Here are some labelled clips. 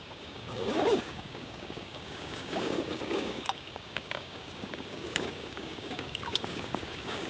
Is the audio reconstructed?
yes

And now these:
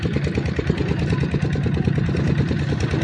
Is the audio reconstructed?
no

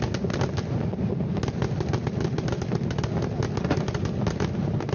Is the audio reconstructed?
no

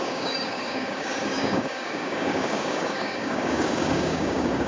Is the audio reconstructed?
yes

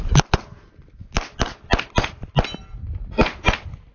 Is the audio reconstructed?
no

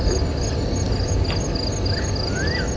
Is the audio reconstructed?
no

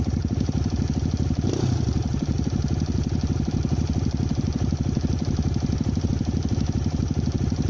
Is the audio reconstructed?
no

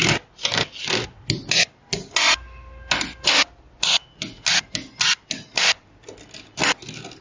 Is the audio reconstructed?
no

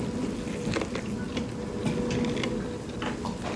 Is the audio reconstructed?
no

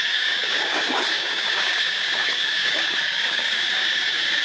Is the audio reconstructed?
yes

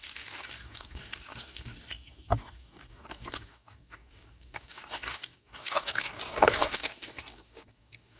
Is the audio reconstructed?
yes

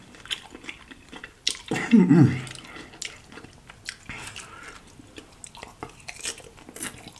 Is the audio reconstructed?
no